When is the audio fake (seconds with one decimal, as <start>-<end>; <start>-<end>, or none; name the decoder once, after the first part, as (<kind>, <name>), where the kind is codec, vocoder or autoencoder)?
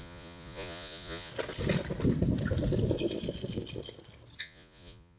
0.0-1.3 (vocoder, Vocos); 4.4-5.2